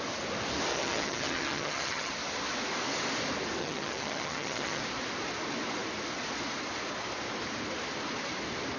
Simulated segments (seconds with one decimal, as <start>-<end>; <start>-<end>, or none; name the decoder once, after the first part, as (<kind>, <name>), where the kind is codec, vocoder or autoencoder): 0.7-2.1 (vocoder, HiFi-GAN); 3.6-4.8